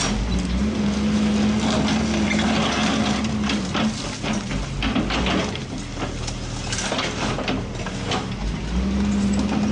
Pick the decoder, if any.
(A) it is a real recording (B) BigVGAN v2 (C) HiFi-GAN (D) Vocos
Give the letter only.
A